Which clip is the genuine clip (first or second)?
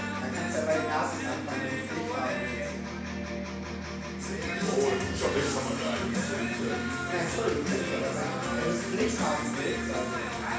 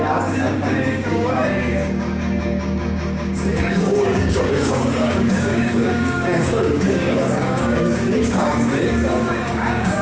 first